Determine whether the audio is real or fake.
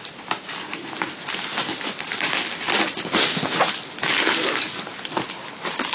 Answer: real